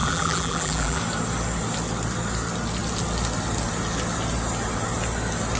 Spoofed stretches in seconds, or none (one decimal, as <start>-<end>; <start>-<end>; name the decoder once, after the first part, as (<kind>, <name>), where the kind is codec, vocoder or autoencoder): 0.0-1.0 (vocoder, BigVGAN v2)